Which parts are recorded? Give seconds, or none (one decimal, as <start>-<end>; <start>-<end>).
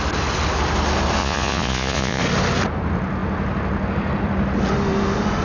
0.0-1.2; 2.2-5.4